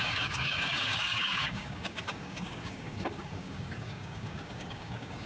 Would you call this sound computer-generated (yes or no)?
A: yes